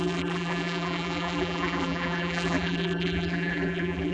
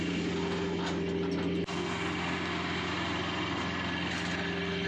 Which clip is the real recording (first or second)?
second